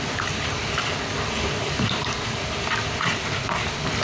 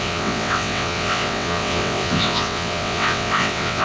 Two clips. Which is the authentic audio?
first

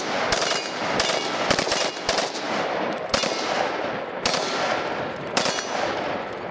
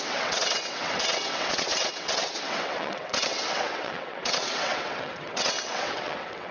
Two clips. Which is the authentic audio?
first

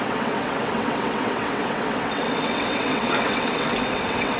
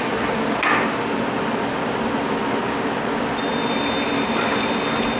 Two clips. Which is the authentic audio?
second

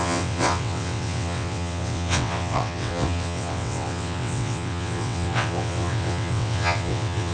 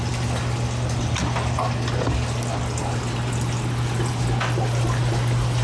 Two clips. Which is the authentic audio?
second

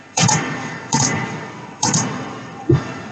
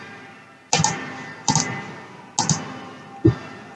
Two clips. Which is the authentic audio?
second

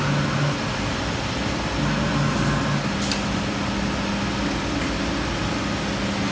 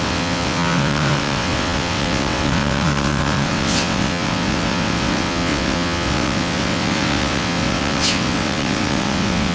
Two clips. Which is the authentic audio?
first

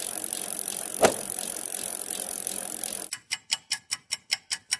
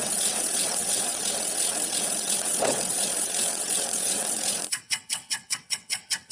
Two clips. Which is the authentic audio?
first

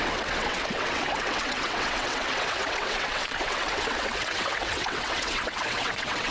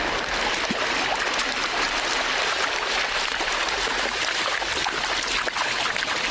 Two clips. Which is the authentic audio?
second